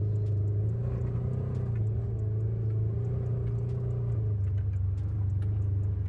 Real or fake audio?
real